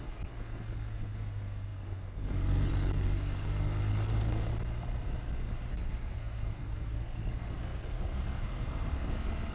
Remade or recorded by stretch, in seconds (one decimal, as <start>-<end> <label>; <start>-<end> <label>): 0.0-4.5 remade; 4.5-5.7 recorded; 5.7-8.9 remade; 8.9-9.5 recorded